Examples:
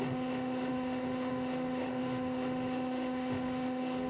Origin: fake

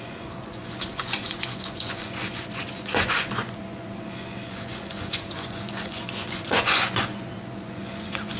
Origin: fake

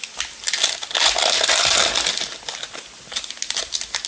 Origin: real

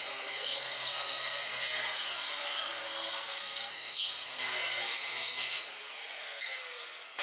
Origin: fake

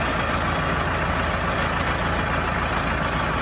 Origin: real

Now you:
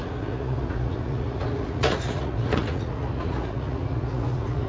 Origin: fake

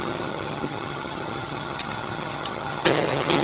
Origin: fake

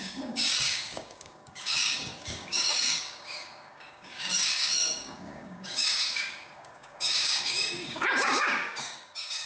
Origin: fake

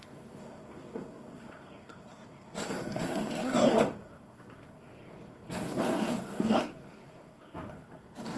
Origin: fake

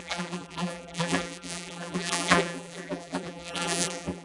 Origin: fake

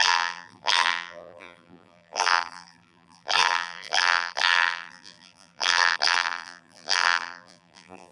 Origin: fake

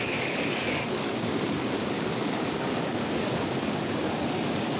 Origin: fake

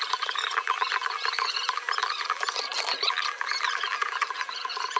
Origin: fake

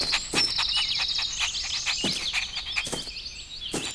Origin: real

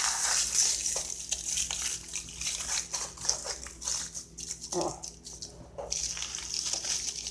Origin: real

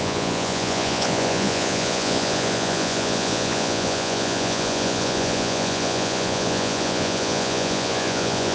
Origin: fake